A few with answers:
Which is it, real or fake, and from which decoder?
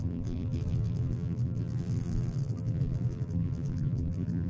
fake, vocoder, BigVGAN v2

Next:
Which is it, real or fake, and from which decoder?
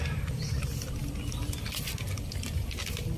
real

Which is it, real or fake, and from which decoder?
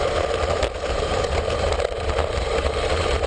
fake, vocoder, BigVGAN v2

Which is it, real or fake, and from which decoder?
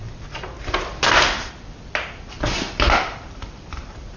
fake, vocoder, BigVGAN v2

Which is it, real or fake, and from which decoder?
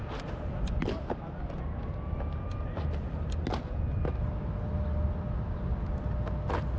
real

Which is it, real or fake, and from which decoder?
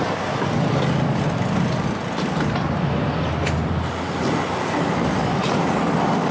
real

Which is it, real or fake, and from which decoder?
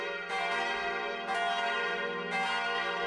real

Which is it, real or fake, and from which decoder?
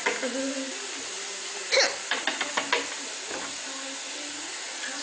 real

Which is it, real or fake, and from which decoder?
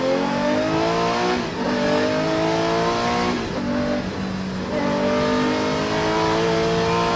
real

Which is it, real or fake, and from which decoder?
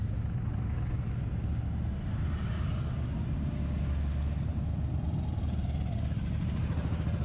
real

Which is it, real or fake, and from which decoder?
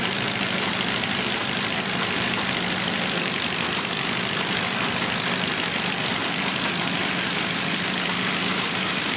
fake, vocoder, BigVGAN v2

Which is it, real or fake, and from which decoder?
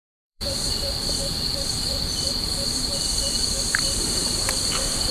fake, vocoder, BigVGAN v2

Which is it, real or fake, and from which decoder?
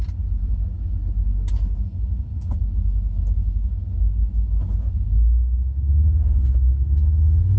real